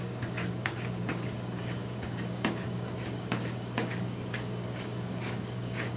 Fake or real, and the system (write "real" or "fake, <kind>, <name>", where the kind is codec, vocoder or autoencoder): fake, codec, DAC